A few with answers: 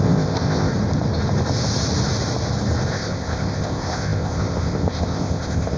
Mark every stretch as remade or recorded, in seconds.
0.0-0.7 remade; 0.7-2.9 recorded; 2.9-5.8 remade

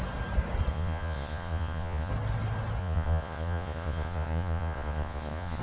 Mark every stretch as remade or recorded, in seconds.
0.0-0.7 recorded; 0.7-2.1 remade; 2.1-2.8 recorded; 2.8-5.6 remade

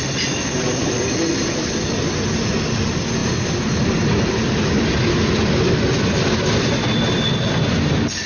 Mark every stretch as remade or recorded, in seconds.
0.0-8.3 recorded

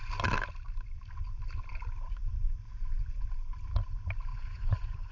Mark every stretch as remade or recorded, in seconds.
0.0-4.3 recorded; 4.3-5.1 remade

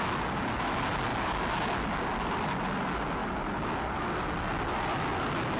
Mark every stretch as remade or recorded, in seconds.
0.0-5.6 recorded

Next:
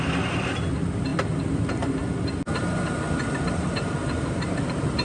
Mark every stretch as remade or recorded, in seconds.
0.0-5.0 recorded

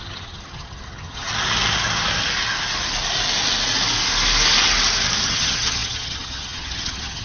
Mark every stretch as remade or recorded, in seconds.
0.0-1.3 remade; 1.3-5.3 recorded; 5.3-7.2 remade